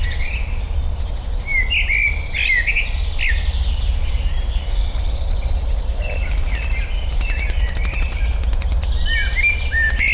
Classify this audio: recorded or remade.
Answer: recorded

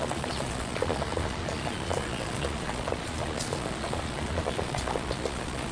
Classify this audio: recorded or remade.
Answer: remade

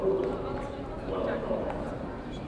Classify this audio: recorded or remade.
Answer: remade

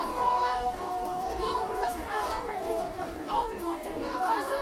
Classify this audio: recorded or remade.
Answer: remade